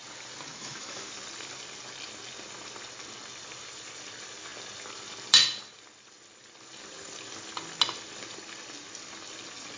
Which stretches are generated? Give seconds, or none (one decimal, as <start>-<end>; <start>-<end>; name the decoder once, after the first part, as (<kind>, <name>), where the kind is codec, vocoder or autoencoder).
0.5-1.1 (autoencoder, DAC-VAE)